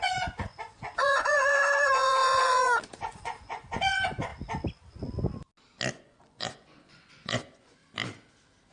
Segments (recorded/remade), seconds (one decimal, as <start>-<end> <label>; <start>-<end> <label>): 0.0-4.3 remade; 4.3-5.9 recorded; 5.9-7.8 remade; 7.8-8.7 recorded